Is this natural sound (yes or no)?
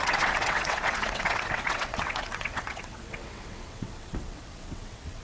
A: no